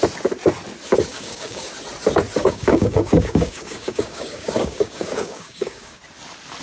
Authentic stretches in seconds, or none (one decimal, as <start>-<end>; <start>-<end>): 0.0-1.1; 1.7-2.4; 6.0-6.6